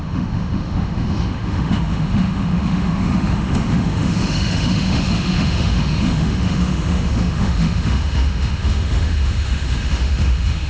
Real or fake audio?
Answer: fake